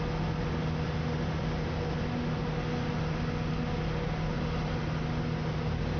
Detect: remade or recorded recorded